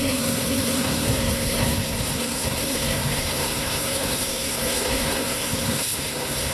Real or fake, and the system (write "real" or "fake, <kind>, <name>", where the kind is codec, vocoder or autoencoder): fake, codec, SNAC